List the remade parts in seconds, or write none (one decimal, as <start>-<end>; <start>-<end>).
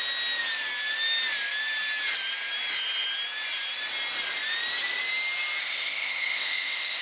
5.6-7.0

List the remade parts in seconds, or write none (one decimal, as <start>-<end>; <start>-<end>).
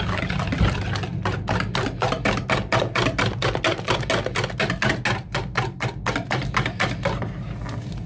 none